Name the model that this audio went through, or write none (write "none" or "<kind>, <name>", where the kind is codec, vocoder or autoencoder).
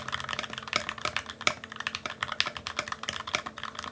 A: none